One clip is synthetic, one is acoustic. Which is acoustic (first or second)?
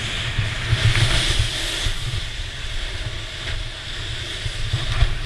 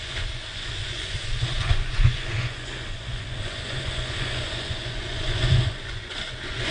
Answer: first